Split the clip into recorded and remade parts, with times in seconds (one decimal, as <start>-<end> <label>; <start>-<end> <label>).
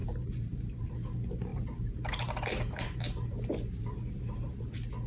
0.0-0.8 remade; 0.8-1.5 recorded; 1.5-4.6 remade; 4.6-5.1 recorded